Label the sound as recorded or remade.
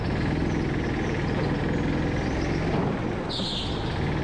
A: recorded